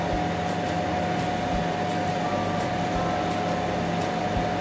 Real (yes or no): yes